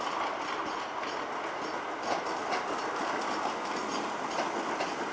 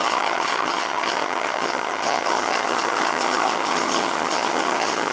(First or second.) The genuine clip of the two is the first